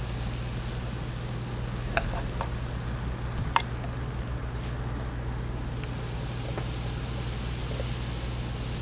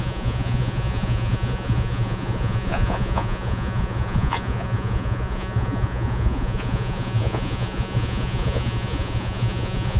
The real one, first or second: first